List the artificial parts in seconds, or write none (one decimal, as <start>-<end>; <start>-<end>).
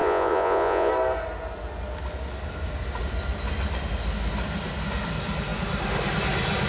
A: 0.0-0.9